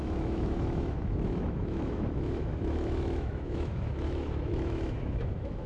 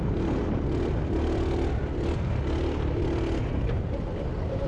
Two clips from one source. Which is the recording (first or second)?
second